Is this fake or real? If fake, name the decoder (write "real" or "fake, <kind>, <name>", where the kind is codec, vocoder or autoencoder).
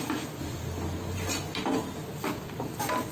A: real